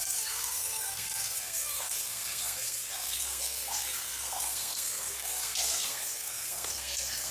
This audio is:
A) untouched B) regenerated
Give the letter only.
B